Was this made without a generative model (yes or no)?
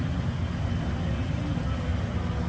yes